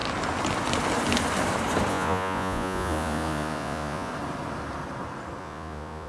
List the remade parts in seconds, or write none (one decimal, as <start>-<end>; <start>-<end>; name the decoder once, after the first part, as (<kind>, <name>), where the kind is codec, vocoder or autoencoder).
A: 1.9-4.1 (vocoder, Vocos); 5.4-6.1